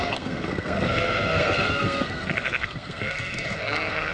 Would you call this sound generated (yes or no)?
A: yes